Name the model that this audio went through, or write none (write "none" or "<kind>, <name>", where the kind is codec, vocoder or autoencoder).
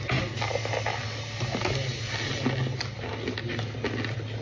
none